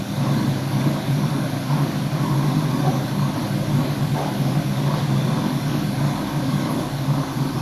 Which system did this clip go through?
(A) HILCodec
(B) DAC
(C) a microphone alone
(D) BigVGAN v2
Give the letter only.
B